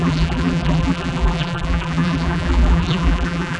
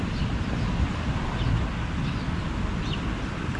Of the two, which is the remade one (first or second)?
first